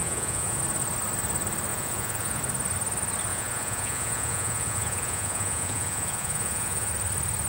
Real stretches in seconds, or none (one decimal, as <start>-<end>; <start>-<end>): 0.6-1.7; 2.4-3.3; 6.9-7.5